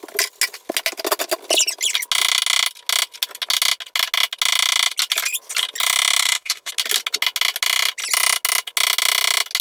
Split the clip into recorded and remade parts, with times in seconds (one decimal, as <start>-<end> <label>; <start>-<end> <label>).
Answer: 0.0-6.2 recorded; 6.2-6.7 remade; 6.7-9.6 recorded